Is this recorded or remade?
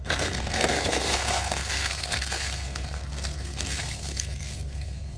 remade